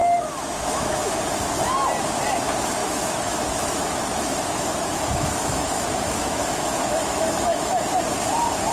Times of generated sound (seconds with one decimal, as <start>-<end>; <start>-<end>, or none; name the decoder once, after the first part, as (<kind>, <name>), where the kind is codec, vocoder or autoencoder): 0.0-1.2 (autoencoder, DAC-VAE); 2.8-7.9